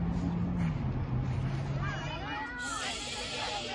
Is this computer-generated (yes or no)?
no